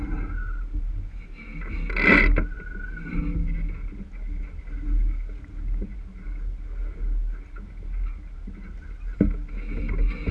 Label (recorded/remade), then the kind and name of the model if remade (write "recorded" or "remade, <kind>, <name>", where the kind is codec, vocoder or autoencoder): recorded